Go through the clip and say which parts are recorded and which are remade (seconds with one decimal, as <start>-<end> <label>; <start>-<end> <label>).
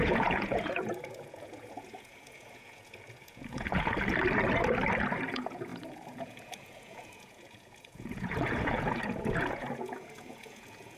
0.0-3.9 remade; 3.9-5.3 recorded; 5.3-11.0 remade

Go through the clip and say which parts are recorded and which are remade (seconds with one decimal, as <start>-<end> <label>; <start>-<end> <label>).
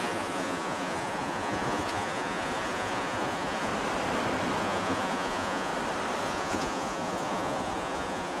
0.0-3.7 remade; 3.7-4.6 recorded; 4.6-5.7 remade; 5.7-6.2 recorded; 6.2-8.4 remade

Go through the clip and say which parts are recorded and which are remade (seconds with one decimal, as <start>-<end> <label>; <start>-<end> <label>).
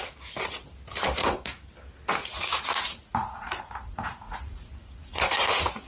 0.0-1.2 recorded; 1.2-1.7 remade; 1.7-2.3 recorded; 2.3-5.9 remade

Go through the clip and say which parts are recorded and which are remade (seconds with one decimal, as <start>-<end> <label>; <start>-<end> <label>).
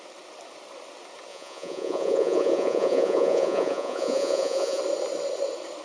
0.0-1.3 recorded; 1.3-4.8 remade; 4.8-5.8 recorded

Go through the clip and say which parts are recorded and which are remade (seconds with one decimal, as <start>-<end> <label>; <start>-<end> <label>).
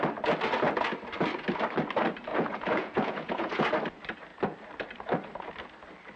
0.0-2.3 recorded; 2.3-3.7 remade; 3.7-6.2 recorded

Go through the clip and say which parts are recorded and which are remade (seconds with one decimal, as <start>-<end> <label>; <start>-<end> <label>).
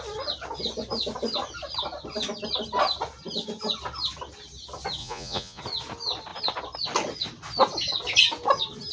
0.0-5.0 recorded; 5.0-5.6 remade; 5.6-8.9 recorded